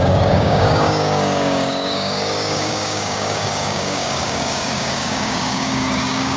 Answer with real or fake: fake